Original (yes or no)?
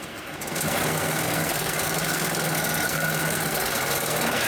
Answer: no